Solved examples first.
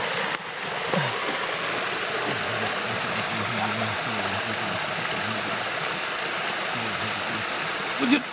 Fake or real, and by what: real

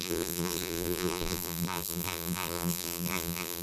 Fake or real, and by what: fake, vocoder, BigVGAN v2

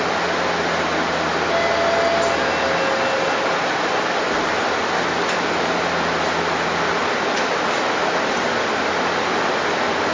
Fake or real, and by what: real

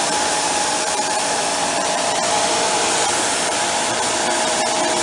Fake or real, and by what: fake, vocoder, BigVGAN v2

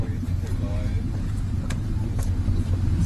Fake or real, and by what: fake, vocoder, BigVGAN v2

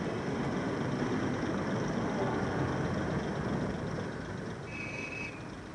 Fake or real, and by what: real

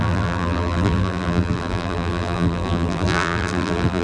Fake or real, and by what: fake, vocoder, BigVGAN v2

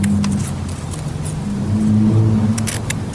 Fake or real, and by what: real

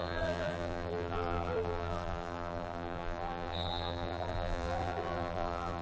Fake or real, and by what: fake, vocoder, BigVGAN v2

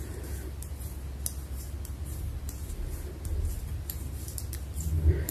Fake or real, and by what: real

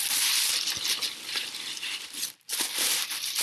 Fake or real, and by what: real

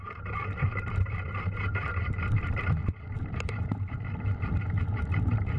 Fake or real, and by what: fake, vocoder, BigVGAN v2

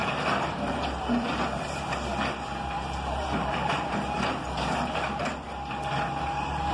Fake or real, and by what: fake, vocoder, BigVGAN v2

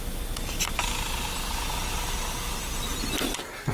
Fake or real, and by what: real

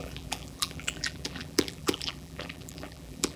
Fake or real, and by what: fake, vocoder, BigVGAN v2